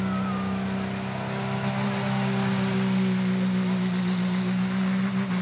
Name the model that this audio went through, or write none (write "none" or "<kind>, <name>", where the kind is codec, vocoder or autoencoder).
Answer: none